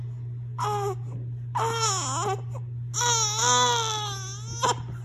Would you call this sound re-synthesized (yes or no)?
no